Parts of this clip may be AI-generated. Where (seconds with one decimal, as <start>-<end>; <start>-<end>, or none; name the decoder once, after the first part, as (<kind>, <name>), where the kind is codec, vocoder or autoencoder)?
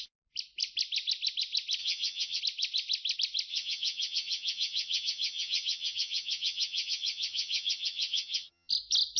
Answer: 1.8-2.4 (vocoder, HiFi-GAN); 3.5-8.7